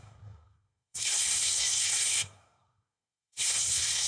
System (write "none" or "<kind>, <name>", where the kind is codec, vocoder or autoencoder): codec, SNAC